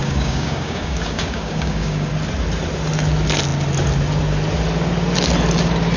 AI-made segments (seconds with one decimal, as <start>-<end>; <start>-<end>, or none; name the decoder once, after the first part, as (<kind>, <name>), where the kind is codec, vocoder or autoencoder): 0.0-2.1 (codec, DAC)